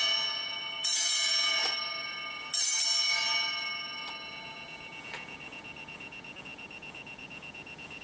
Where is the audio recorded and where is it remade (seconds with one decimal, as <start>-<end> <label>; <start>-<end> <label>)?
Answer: 0.0-1.6 remade; 1.6-4.3 recorded; 4.3-8.0 remade